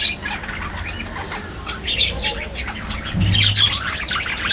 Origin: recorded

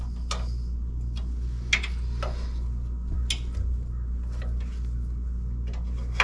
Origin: recorded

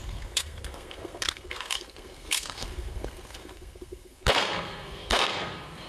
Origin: remade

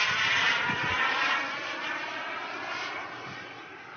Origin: recorded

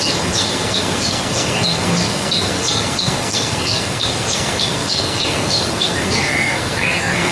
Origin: remade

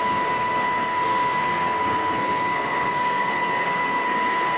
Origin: remade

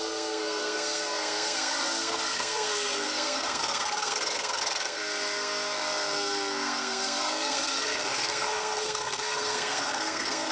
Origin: remade